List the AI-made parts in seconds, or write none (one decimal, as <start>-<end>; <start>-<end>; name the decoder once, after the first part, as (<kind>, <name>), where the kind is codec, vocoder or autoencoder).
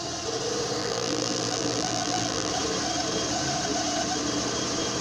0.8-2.5 (vocoder, BigVGAN v2)